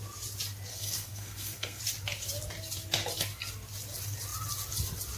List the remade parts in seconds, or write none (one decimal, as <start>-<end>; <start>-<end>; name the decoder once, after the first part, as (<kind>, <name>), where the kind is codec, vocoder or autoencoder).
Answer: 0.7-1.8 (codec, SNAC)